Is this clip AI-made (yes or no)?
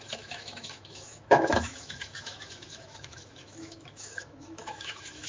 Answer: yes